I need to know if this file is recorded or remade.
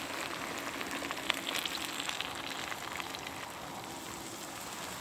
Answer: recorded